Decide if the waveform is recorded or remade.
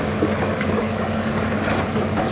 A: remade